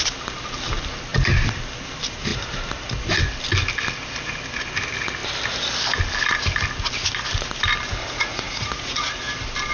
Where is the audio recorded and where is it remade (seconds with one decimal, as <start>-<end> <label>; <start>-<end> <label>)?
0.0-8.0 recorded; 8.0-9.2 remade; 9.2-9.7 recorded